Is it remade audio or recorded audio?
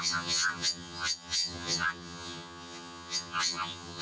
remade